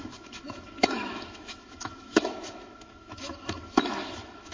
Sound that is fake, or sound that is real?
fake